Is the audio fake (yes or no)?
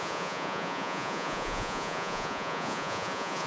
yes